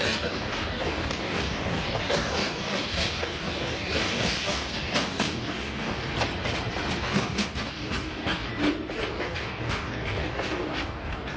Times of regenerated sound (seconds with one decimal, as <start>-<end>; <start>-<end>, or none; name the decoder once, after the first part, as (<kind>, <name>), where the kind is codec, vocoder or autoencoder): 0.0-6.1 (codec, DAC); 7.0-8.5; 9.1-11.4